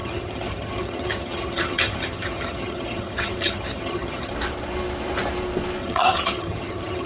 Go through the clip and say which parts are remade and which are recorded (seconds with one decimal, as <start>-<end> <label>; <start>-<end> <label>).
0.0-4.3 remade; 4.3-5.8 recorded; 5.8-7.1 remade